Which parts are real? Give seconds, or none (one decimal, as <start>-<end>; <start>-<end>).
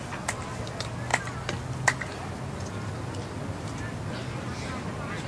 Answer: 0.0-5.3